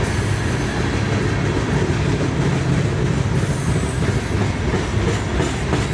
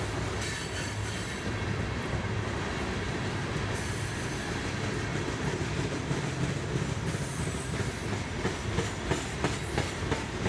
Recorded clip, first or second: first